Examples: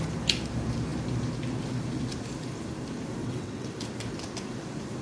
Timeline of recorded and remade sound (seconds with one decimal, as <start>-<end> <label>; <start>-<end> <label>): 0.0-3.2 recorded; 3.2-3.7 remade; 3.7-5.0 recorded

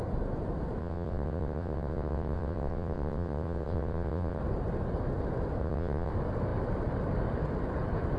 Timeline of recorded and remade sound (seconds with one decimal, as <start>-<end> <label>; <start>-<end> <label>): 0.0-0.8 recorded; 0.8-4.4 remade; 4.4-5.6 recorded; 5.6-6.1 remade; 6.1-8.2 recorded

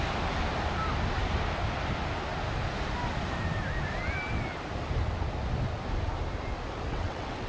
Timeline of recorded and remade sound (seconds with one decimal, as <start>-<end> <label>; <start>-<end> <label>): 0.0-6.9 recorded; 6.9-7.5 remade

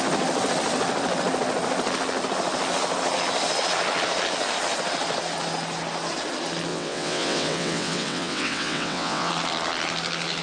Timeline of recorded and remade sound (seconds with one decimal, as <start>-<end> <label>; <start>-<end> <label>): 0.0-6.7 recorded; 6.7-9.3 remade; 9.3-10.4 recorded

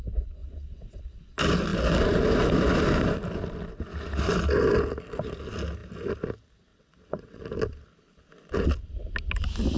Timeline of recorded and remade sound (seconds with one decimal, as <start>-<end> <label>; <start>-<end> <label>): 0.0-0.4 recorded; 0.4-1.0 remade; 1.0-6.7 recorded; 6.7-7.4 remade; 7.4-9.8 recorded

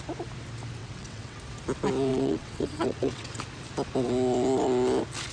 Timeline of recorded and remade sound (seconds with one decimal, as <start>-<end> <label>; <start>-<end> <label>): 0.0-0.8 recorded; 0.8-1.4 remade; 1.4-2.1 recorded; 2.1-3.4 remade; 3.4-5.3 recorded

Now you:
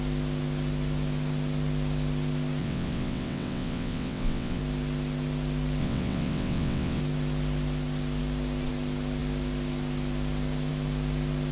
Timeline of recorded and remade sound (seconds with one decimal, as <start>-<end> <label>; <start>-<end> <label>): 0.0-2.6 recorded; 2.6-4.6 remade; 4.6-5.8 recorded; 5.8-7.0 remade; 7.0-11.5 recorded

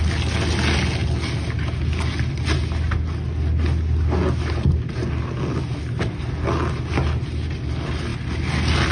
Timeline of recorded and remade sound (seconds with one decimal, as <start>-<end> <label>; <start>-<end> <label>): 0.0-8.9 recorded